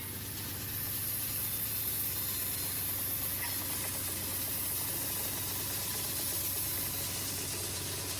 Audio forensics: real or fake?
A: real